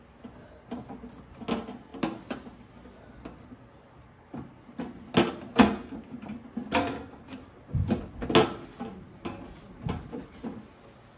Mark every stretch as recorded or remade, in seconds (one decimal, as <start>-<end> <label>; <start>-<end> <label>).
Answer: 0.0-11.2 recorded